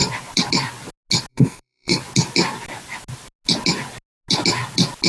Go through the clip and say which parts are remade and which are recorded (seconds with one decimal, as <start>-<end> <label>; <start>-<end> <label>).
0.0-1.3 recorded; 1.3-2.0 remade; 2.0-5.1 recorded